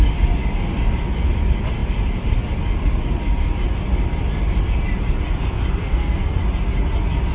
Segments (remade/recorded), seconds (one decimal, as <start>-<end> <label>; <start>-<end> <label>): 0.0-5.8 recorded; 5.8-6.4 remade; 6.4-7.3 recorded